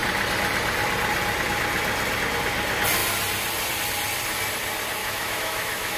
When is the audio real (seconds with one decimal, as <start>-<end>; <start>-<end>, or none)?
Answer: 0.0-5.0